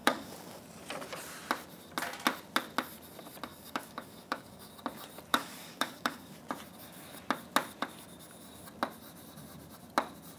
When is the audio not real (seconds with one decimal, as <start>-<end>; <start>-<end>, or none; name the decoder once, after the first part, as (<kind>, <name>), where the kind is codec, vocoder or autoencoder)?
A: 0.0-0.6 (codec, DAC); 3.5-4.7; 5.3-6.4